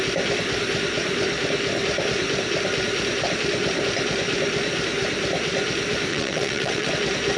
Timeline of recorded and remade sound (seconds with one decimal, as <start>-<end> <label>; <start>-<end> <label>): 0.0-6.1 recorded; 6.1-6.9 remade; 6.9-7.4 recorded